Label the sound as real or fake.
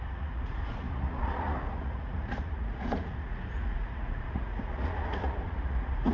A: fake